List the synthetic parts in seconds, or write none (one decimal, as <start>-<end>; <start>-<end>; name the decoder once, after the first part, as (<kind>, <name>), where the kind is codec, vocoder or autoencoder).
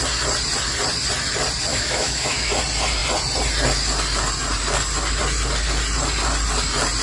1.7-2.5 (autoencoder, DAC-VAE)